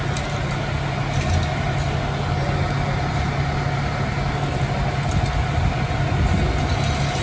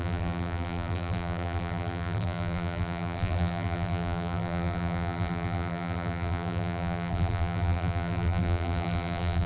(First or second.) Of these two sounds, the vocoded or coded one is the second